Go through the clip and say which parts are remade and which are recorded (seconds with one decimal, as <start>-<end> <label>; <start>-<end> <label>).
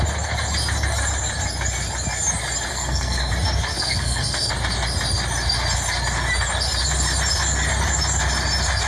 0.0-2.7 recorded; 2.7-3.3 remade; 3.3-3.7 recorded; 3.7-4.5 remade; 4.5-8.9 recorded